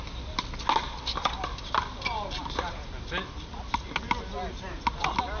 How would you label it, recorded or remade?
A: recorded